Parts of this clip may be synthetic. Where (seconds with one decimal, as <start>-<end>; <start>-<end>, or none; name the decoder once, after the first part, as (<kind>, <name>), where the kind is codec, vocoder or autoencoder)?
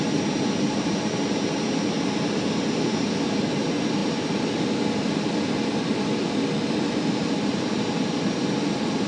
none